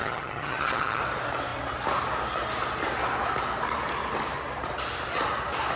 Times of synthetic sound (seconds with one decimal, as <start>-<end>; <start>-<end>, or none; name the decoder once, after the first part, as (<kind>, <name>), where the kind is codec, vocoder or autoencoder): 0.0-1.0 (vocoder, HiFi-GAN)